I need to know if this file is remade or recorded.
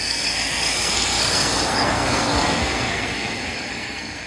remade